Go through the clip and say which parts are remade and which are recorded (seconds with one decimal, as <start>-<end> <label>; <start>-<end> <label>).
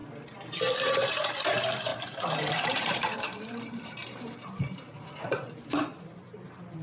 0.0-1.1 recorded; 1.1-6.8 remade